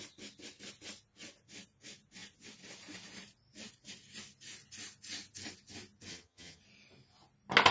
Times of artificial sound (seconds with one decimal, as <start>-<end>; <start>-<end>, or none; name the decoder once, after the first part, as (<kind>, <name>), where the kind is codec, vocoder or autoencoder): 6.1-6.6 (vocoder, HiFi-GAN)